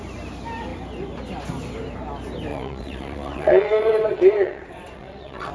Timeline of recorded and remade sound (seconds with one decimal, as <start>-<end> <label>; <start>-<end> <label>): 0.0-2.5 recorded; 2.5-5.5 remade